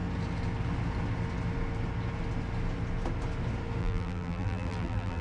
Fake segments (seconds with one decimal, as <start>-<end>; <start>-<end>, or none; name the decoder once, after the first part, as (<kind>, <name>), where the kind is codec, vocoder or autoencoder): 3.8-5.2 (vocoder, BigVGAN v2)